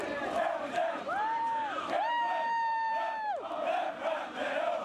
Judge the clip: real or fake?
fake